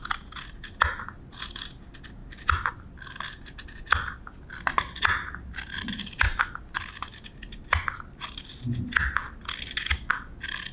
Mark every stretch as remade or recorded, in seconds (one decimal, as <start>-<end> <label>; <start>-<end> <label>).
0.0-10.7 recorded